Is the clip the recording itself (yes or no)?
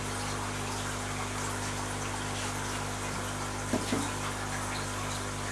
yes